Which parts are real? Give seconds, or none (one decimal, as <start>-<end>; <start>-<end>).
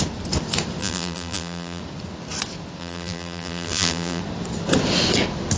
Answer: 0.0-0.8; 1.8-2.8; 4.2-5.6